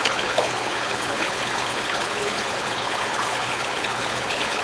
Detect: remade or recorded remade